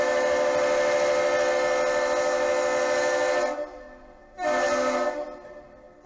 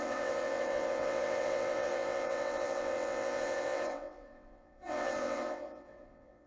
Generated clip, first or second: second